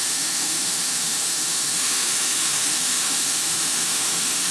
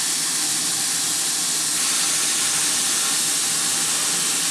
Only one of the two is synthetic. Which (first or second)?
first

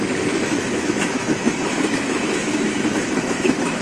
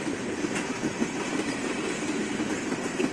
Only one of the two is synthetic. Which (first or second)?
first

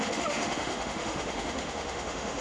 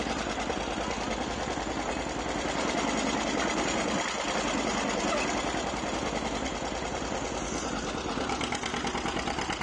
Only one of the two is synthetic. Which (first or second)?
first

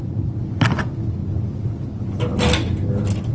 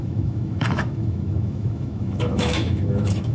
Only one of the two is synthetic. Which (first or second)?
second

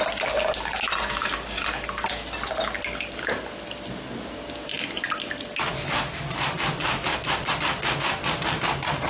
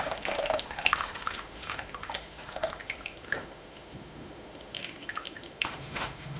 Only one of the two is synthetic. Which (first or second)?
second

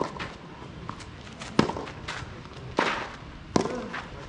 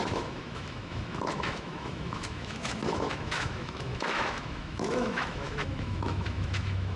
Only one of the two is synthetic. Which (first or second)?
second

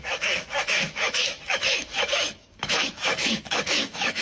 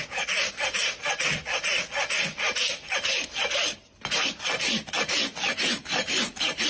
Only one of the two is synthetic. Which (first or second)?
first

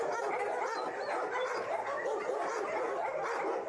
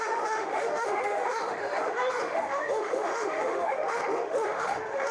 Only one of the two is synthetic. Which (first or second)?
second